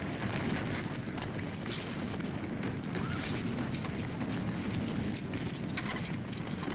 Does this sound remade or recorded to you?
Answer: recorded